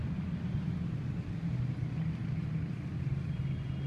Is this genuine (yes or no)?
yes